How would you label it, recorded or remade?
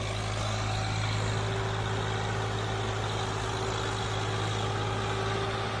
recorded